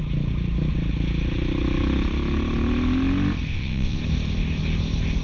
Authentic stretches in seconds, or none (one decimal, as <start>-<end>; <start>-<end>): 0.0-3.5; 4.0-5.2